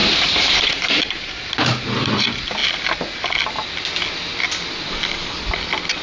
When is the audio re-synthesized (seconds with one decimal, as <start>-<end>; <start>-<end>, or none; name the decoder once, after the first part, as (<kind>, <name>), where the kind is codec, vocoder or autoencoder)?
0.0-1.4 (vocoder, BigVGAN v2)